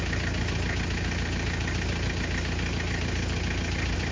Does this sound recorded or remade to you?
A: recorded